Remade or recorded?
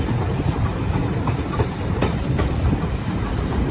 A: remade